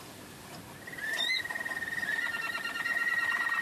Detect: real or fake real